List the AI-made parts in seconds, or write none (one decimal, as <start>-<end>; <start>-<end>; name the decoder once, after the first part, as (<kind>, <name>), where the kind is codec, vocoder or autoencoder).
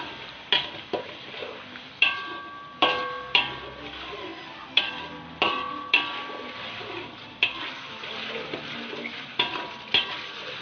0.0-10.6 (vocoder, BigVGAN v2)